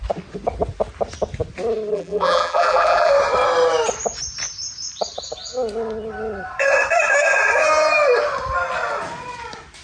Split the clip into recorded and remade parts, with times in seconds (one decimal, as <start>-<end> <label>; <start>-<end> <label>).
0.0-1.9 recorded; 1.9-3.1 remade; 3.1-9.8 recorded